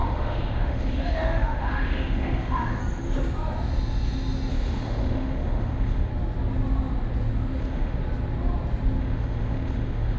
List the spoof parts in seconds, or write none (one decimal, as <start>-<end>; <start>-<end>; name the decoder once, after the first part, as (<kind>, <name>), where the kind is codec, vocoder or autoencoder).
0.0-2.8 (autoencoder, DAC-VAE); 4.5-6.1; 7.6-8.0; 9.0-10.2